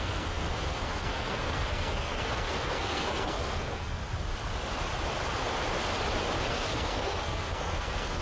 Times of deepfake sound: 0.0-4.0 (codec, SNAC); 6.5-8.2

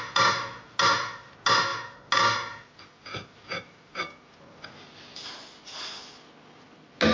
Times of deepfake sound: none

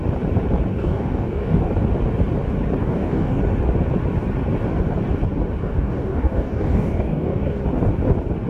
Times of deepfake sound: 0.7-1.6 (codec, DAC); 2.8-3.4; 5.6-7.6

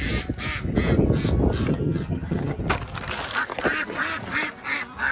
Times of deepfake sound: 1.7-2.6 (vocoder, HiFi-GAN)

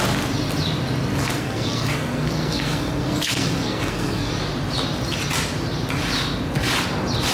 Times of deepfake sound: 1.2-4.3 (codec, SNAC)

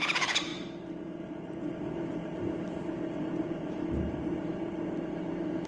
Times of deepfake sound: 0.0-5.7 (vocoder, BigVGAN v2)

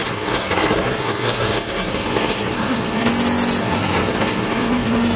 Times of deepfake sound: 0.0-3.1 (codec, SNAC); 3.6-5.2